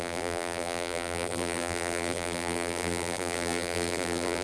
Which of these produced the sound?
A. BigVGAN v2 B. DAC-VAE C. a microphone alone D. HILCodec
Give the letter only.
A